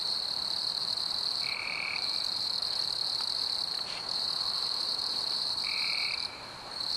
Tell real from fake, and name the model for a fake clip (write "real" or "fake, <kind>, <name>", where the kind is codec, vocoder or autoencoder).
fake, vocoder, BigVGAN v2